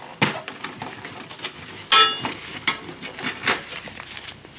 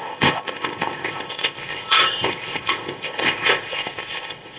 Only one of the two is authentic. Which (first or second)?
first